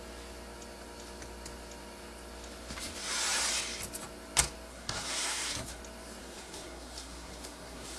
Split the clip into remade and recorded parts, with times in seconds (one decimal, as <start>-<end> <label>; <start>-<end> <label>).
0.0-4.7 recorded; 4.7-5.8 remade; 5.8-6.2 recorded; 6.2-8.0 remade